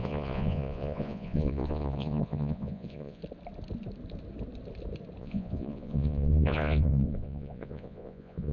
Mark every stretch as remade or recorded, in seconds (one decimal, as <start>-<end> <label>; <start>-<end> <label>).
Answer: 0.0-3.2 remade; 3.2-5.2 recorded; 5.2-8.5 remade